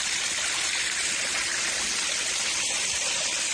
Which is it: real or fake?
real